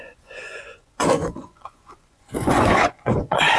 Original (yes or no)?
no